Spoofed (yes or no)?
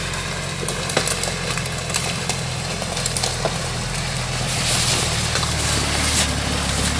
no